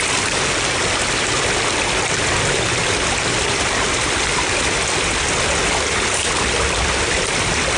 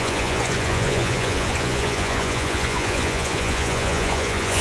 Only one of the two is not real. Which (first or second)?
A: second